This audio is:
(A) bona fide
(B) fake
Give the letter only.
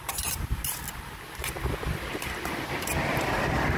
B